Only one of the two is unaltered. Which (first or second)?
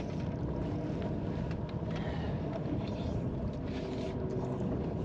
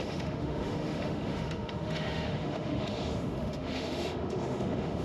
first